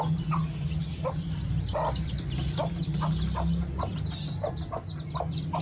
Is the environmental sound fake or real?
real